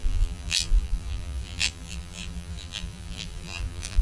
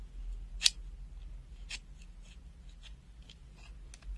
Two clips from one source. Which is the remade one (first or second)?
first